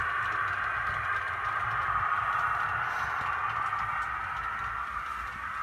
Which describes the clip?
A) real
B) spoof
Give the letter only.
A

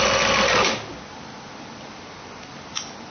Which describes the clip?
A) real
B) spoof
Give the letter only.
A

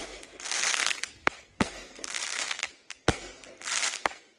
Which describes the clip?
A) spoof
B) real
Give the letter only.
A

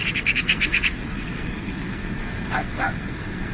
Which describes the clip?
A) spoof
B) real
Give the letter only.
A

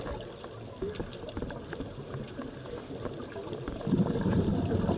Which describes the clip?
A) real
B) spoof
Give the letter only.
A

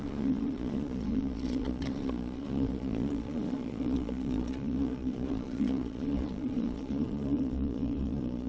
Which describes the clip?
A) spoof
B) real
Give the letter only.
A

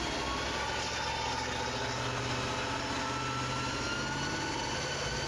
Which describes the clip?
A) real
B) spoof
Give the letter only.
A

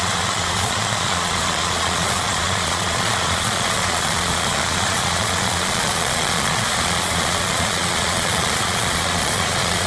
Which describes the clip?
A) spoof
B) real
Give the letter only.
A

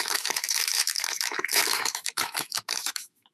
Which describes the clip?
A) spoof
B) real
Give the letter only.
A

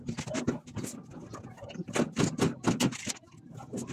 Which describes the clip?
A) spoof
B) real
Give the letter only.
B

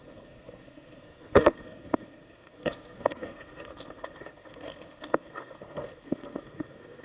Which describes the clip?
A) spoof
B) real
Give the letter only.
A